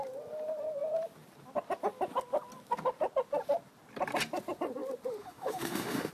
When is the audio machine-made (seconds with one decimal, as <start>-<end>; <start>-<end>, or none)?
5.2-6.1